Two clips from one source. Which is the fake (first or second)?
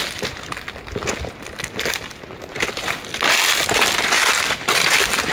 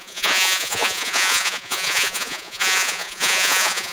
second